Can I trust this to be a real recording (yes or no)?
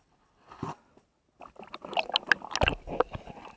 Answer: yes